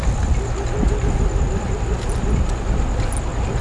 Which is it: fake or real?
real